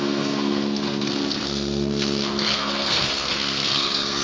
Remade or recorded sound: remade